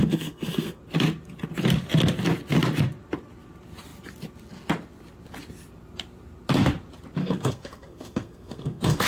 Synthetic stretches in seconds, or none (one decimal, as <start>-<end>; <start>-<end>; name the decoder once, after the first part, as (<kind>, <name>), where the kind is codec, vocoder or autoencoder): 0.0-0.8 (codec, SNAC); 7.2-9.1